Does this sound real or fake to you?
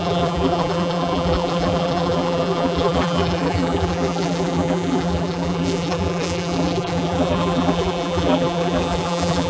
fake